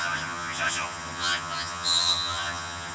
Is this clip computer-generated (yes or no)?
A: yes